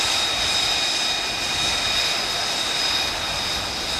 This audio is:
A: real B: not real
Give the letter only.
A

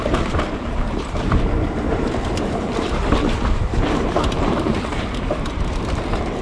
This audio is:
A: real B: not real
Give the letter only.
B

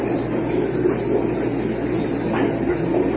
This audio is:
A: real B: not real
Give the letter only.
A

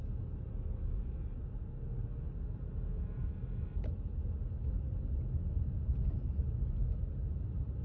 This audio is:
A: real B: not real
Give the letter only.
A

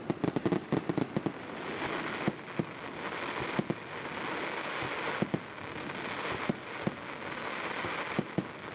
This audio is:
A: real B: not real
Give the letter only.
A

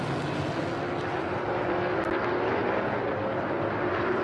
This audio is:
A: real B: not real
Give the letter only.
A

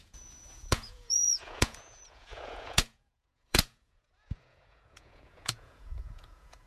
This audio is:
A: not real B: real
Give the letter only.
A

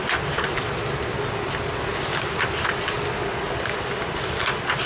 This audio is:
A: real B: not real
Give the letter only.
A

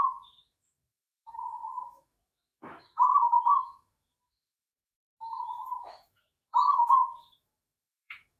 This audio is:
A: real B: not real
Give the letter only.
B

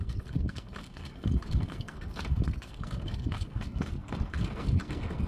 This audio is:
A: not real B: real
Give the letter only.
A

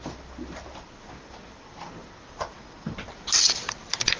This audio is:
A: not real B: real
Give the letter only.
B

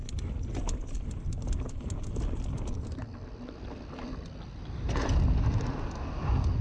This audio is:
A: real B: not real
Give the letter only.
A